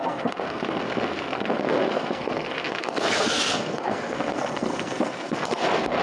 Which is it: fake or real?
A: fake